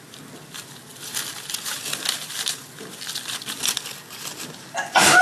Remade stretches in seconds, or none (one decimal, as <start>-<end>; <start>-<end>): none